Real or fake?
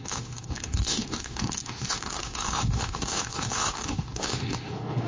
fake